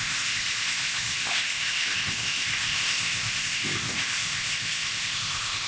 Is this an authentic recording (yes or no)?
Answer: no